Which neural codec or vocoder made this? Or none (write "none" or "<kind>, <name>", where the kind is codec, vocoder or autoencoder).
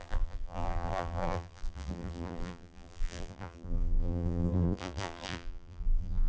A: vocoder, BigVGAN v2